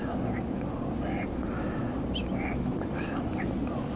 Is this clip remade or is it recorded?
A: recorded